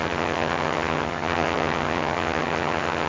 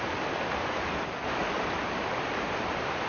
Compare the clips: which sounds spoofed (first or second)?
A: first